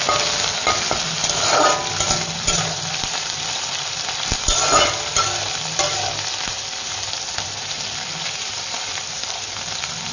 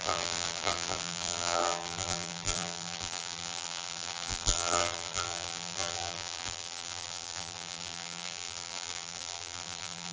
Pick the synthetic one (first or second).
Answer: second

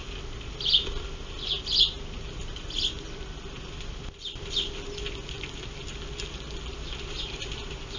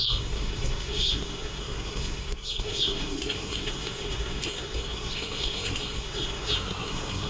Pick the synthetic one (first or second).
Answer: second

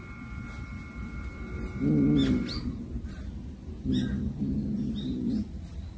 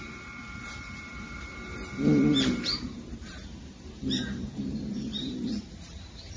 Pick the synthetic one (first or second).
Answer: second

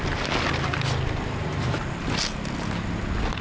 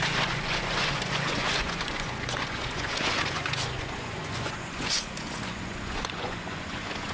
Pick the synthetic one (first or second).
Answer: second